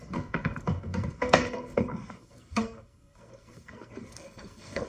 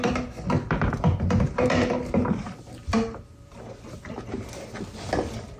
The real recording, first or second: second